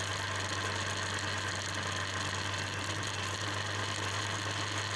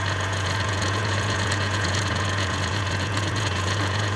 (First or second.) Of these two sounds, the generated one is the second